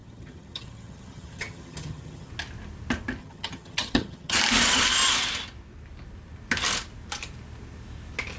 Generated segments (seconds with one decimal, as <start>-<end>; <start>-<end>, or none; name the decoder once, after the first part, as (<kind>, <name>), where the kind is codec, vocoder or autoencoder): 0.0-2.3 (vocoder, HiFi-GAN); 3.2-4.4